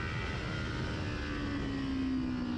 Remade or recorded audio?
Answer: recorded